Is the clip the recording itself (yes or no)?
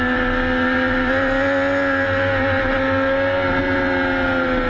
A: yes